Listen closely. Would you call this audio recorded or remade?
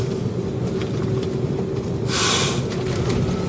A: recorded